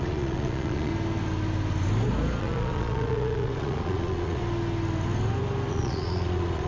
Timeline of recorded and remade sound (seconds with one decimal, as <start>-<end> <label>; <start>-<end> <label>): 0.0-0.9 remade; 0.9-2.4 recorded; 2.4-4.4 remade; 4.4-5.7 recorded; 5.7-6.7 remade